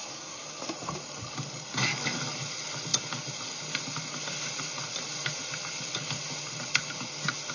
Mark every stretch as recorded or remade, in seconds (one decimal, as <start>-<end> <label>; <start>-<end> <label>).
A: 0.0-0.6 remade; 0.6-1.7 recorded; 1.7-2.2 remade; 2.2-7.5 recorded